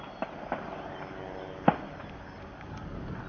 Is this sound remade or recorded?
recorded